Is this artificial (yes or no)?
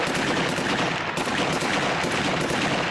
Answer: no